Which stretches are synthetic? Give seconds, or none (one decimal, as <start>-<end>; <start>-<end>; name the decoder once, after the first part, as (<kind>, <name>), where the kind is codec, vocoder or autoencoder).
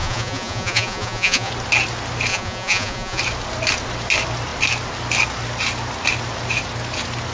0.0-1.5 (vocoder, Vocos); 2.3-3.2